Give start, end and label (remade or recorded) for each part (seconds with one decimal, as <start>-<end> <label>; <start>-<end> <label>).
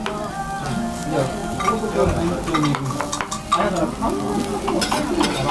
0.0-5.5 recorded